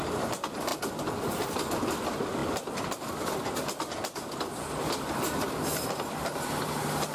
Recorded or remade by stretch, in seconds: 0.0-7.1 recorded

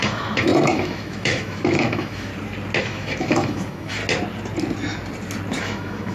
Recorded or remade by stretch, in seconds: 0.0-2.3 remade; 2.3-2.8 recorded; 2.8-4.0 remade; 4.0-5.6 recorded; 5.6-6.1 remade

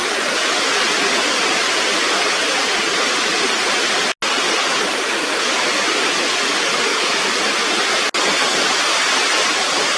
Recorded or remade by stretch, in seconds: 0.0-6.9 recorded; 6.9-7.4 remade; 7.4-10.0 recorded